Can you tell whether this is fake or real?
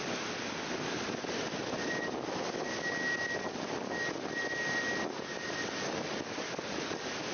real